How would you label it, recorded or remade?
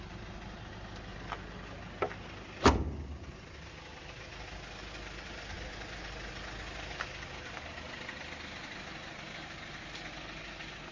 recorded